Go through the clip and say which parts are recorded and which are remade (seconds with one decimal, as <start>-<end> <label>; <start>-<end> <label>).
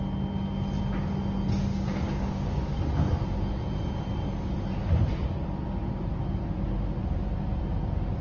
0.0-1.7 recorded; 1.7-2.8 remade; 2.8-8.2 recorded